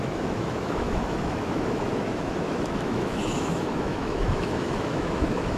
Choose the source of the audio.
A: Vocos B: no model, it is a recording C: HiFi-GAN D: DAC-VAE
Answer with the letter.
D